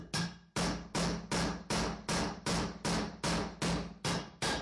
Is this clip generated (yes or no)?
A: no